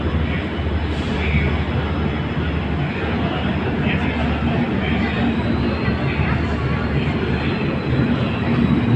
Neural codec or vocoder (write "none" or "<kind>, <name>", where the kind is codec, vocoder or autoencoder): none